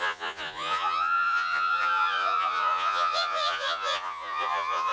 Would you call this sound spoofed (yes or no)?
yes